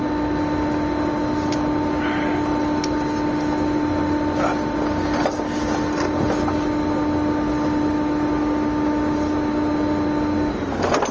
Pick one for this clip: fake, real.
real